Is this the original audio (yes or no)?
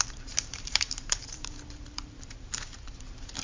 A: no